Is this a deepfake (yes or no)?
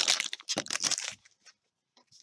yes